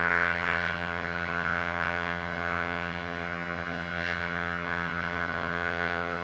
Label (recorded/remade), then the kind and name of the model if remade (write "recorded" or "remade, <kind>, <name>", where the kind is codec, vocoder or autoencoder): remade, vocoder, HiFi-GAN